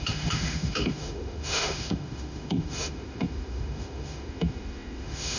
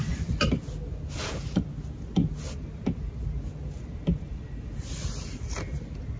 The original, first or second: second